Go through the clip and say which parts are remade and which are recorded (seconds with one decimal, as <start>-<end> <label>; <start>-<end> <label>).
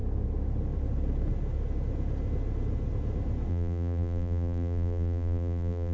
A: 0.0-3.5 recorded; 3.5-5.9 remade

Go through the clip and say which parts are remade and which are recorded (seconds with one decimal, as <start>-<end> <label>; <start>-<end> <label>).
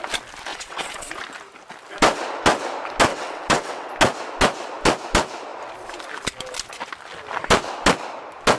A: 0.0-0.5 recorded; 0.5-1.1 remade; 1.1-3.1 recorded; 3.1-3.9 remade; 3.9-8.6 recorded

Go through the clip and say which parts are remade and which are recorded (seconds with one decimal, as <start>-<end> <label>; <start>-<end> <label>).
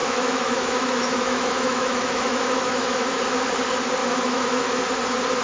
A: 0.0-3.2 remade; 3.2-4.0 recorded; 4.0-4.8 remade; 4.8-5.4 recorded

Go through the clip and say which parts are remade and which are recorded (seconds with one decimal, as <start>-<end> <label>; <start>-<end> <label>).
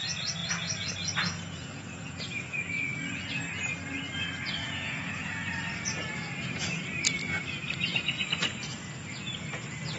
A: 0.0-0.4 recorded; 0.4-3.3 remade; 3.3-4.6 recorded; 4.6-5.5 remade; 5.5-10.0 recorded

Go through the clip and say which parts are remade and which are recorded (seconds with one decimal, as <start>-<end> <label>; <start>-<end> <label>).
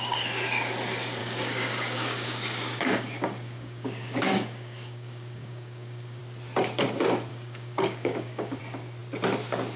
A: 0.0-1.2 recorded; 1.2-6.2 remade; 6.2-7.3 recorded; 7.3-8.6 remade; 8.6-9.8 recorded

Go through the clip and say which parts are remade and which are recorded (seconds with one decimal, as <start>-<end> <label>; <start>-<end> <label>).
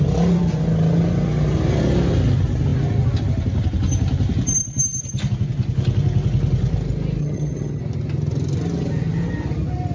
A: 0.0-7.2 recorded; 7.2-7.8 remade; 7.8-9.9 recorded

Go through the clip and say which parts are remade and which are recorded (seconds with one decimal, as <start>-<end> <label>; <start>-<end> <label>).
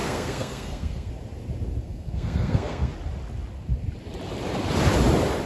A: 0.0-1.1 remade; 1.1-1.8 recorded; 1.8-2.9 remade; 2.9-5.5 recorded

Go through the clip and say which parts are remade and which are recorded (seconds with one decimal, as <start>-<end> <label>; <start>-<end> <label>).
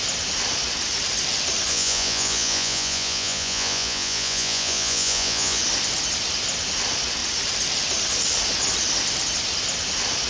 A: 0.0-1.7 recorded; 1.7-5.6 remade; 5.6-10.3 recorded